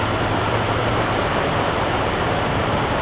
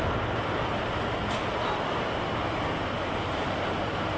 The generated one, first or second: first